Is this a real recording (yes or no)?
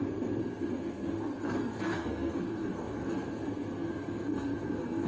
no